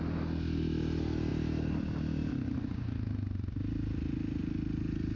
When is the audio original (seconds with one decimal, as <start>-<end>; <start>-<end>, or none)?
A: 0.0-5.2